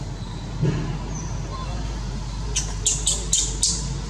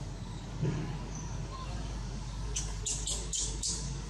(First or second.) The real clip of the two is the first